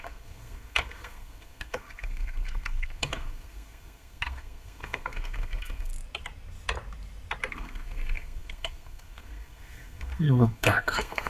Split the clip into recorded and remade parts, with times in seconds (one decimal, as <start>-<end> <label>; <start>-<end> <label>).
0.0-5.9 remade; 5.9-7.5 recorded; 7.5-11.3 remade